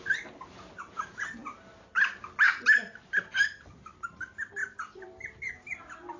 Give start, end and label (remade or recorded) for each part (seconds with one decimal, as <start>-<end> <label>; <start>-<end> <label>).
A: 0.0-6.2 recorded